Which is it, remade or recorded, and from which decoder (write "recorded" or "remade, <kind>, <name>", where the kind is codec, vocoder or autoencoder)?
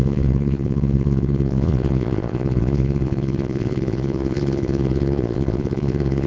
remade, vocoder, Vocos